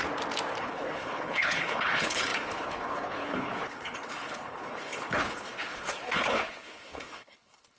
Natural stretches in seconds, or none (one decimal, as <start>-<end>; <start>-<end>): 0.0-0.6